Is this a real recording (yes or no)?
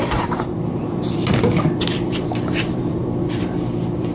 no